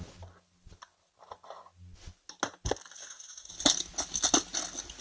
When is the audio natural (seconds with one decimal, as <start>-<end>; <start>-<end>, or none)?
0.0-3.0; 3.5-5.0